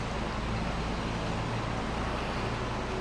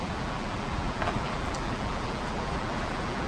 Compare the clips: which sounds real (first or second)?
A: first